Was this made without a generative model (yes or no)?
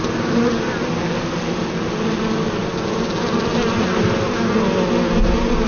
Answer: yes